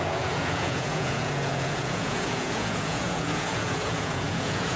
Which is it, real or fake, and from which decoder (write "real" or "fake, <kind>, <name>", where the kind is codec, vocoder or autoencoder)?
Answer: fake, vocoder, Vocos